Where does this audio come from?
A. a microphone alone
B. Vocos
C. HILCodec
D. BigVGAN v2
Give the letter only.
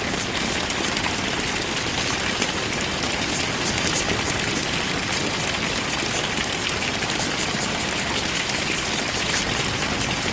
A